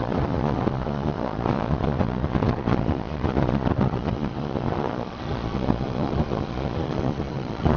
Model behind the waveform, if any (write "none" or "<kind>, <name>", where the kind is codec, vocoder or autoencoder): vocoder, Vocos